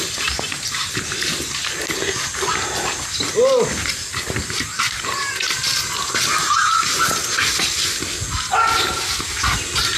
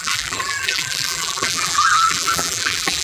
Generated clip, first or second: second